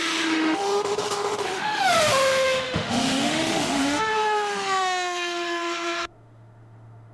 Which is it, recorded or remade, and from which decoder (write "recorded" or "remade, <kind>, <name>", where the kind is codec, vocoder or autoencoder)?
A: remade, autoencoder, DAC-VAE